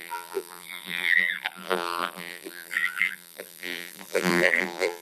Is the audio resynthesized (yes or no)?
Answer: yes